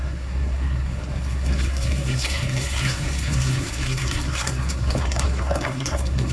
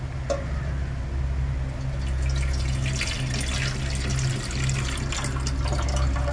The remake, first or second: first